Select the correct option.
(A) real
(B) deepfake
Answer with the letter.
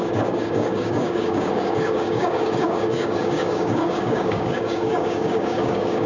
B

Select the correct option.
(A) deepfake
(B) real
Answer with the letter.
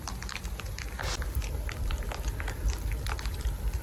A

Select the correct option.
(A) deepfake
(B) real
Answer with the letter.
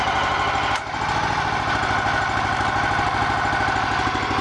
B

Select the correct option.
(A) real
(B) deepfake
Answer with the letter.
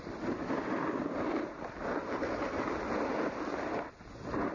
A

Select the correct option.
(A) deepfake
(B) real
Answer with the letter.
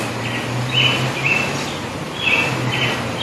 B